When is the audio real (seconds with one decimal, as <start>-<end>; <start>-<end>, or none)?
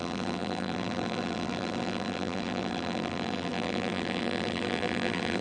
none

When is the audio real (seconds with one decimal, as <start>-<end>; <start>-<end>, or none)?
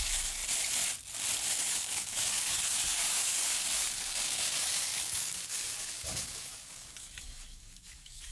0.4-1.6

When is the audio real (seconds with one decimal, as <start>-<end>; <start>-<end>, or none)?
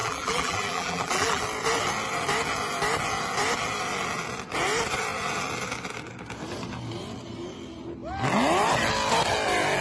1.4-9.8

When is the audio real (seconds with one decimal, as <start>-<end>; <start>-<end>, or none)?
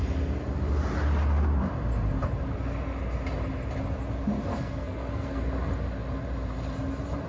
0.0-4.5; 5.5-7.3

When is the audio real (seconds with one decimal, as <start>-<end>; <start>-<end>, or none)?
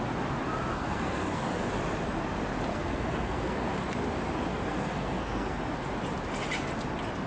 0.0-0.7; 1.7-2.7; 3.7-4.5; 5.6-7.3